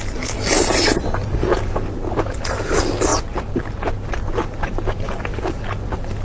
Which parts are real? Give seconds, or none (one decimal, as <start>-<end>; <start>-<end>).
0.0-6.2